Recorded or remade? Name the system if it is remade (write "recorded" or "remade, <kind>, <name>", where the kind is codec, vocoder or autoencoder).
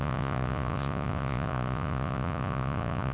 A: remade, vocoder, Vocos